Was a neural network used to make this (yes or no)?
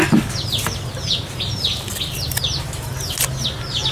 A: no